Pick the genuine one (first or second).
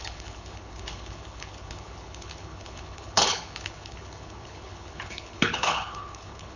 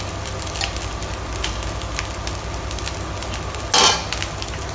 second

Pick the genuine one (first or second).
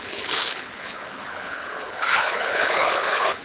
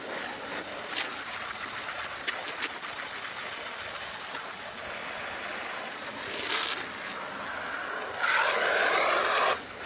second